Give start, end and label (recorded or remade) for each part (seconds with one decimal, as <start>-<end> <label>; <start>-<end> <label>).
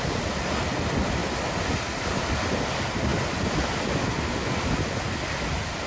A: 0.0-5.9 recorded